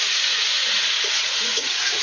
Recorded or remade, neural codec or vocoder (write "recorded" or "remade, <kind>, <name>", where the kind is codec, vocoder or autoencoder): remade, vocoder, Vocos